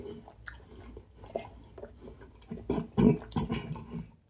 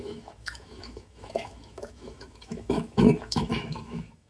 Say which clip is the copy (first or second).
second